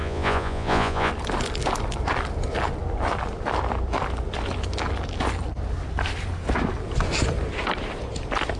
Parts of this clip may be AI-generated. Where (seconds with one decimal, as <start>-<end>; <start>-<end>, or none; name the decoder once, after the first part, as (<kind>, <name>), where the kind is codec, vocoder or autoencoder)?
0.0-1.1 (vocoder, Vocos)